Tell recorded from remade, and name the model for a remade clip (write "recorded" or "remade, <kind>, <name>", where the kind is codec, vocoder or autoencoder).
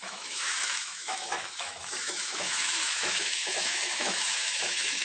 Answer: remade, autoencoder, DAC-VAE